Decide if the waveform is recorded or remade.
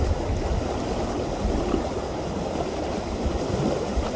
recorded